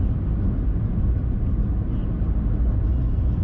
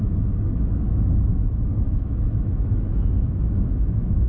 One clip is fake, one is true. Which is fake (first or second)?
second